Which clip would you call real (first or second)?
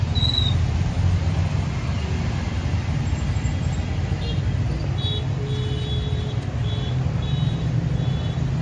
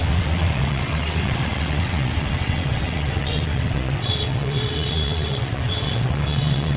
first